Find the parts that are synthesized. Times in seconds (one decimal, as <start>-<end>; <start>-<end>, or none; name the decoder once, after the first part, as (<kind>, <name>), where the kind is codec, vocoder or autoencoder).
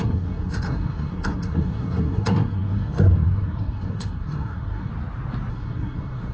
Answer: 0.0-4.9 (codec, SNAC); 5.5-6.3